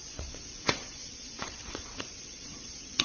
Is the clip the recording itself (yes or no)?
no